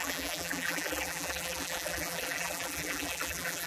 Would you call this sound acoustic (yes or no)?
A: no